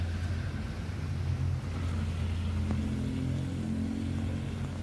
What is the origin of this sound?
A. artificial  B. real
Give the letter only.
B